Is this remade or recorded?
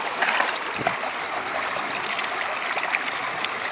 recorded